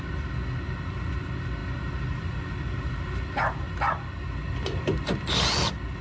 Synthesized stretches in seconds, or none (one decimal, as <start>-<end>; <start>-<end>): none